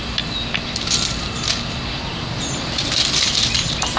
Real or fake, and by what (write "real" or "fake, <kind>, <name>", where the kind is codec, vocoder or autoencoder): real